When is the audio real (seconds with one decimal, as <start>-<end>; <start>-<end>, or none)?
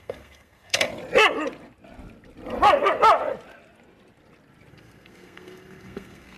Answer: 0.9-4.7